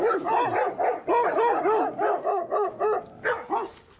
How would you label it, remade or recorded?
recorded